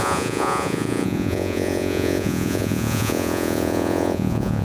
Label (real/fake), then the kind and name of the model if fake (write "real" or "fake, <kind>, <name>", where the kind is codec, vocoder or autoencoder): fake, vocoder, Vocos